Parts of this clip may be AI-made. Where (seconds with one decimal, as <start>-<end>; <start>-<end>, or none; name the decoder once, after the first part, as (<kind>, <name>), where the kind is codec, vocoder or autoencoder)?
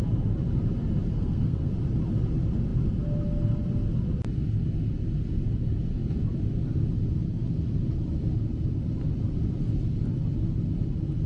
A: 1.1-1.7 (codec, SNAC)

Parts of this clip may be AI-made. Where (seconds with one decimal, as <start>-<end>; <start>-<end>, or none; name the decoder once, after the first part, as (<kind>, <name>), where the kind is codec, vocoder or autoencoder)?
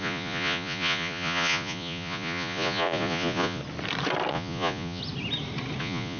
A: 0.0-3.6 (vocoder, Vocos); 4.3-5.0; 5.8-6.2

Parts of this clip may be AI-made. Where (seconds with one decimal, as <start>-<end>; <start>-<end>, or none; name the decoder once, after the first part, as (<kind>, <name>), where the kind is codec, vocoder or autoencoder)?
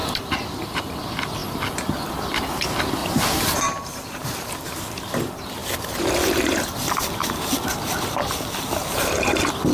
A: 0.0-0.8 (vocoder, BigVGAN v2); 3.0-4.5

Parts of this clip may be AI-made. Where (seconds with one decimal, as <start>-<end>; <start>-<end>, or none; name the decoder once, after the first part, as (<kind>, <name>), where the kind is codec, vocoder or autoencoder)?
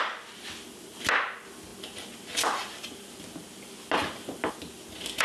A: none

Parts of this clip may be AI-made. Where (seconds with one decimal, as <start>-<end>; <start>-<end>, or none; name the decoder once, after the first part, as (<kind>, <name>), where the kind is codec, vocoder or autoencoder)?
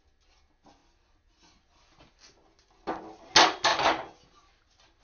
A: none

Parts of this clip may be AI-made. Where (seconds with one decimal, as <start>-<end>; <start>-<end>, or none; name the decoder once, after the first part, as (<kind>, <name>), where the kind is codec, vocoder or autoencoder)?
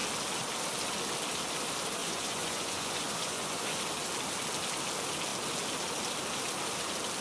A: 2.0-3.8 (vocoder, Vocos)